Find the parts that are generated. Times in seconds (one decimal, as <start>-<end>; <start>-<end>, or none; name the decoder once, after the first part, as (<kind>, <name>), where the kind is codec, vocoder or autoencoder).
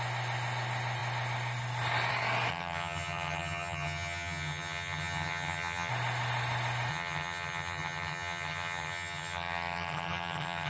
2.5-5.9 (vocoder, HiFi-GAN); 6.9-10.7